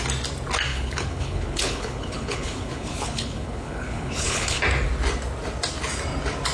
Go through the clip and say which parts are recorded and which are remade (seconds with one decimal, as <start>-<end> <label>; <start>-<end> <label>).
0.0-0.7 recorded; 0.7-4.6 remade; 4.6-6.5 recorded